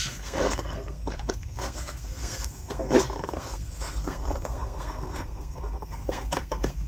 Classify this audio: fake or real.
fake